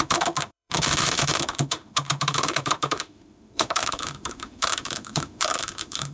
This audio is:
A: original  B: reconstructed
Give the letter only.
B